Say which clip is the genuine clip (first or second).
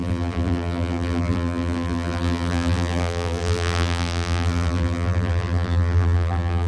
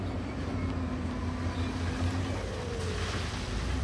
second